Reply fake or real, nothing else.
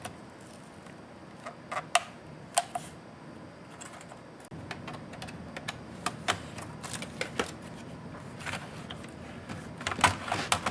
real